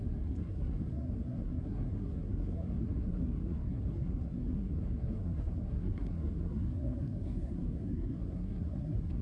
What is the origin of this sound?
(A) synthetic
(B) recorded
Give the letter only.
A